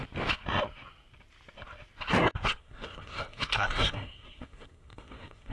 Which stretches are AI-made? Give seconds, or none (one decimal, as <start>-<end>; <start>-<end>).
2.1-5.5